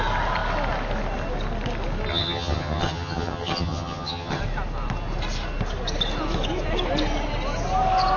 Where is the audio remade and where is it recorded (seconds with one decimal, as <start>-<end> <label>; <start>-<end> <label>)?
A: 0.0-2.1 recorded; 2.1-4.4 remade; 4.4-8.2 recorded